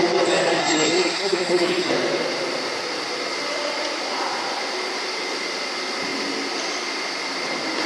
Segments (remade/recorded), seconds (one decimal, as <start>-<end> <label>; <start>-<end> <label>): 0.0-0.6 recorded; 0.6-1.9 remade; 1.9-7.9 recorded

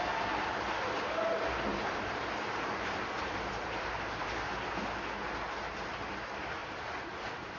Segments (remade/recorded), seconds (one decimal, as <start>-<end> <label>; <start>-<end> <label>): 0.0-1.7 recorded; 1.7-4.5 remade; 4.5-6.6 recorded; 6.6-7.6 remade

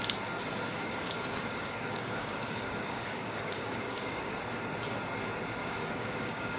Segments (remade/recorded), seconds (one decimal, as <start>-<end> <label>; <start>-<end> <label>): 0.0-0.7 recorded; 0.7-4.4 remade; 4.4-5.6 recorded; 5.6-6.6 remade

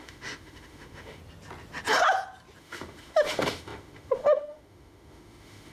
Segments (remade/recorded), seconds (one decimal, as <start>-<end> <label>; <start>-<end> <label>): 0.0-1.2 remade; 1.2-2.6 recorded; 2.6-5.7 remade

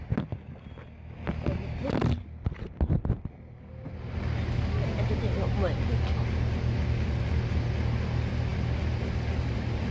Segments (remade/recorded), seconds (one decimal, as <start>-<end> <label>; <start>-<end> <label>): 0.0-8.5 recorded; 8.5-9.9 remade